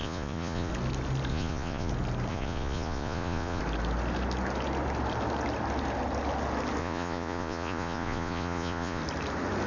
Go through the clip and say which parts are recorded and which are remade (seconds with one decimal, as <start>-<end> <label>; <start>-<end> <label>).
0.0-0.7 remade; 0.7-1.3 recorded; 1.3-1.9 remade; 1.9-2.3 recorded; 2.3-3.6 remade; 3.6-6.8 recorded; 6.8-9.0 remade; 9.0-9.7 recorded